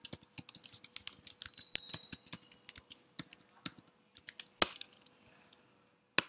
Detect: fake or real real